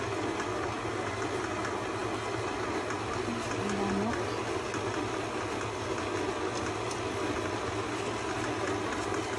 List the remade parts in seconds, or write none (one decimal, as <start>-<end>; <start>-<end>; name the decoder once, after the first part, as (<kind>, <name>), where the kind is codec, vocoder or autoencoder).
none

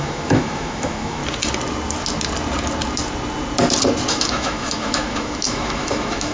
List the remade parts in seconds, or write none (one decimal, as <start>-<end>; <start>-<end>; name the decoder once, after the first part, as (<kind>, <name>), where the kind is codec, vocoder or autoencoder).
0.0-1.2 (autoencoder, DAC-VAE); 4.1-6.3

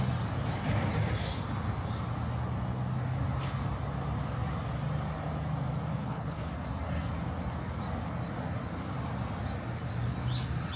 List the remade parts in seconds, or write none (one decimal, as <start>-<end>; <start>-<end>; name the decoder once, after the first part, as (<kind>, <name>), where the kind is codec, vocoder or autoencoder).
6.0-6.5 (codec, HILCodec)

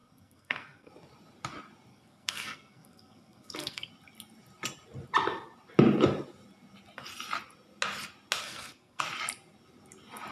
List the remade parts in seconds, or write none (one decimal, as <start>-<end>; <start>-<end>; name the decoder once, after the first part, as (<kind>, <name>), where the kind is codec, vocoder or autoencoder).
0.0-0.9 (codec, SNAC); 1.9-3.9; 8.4-9.0

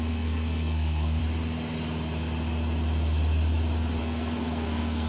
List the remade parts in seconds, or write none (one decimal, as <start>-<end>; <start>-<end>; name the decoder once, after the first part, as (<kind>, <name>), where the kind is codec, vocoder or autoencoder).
0.0-1.2 (codec, SNAC); 4.0-5.1